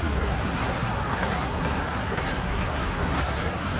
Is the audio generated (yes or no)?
yes